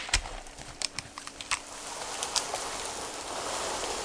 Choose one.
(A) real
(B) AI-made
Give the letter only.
B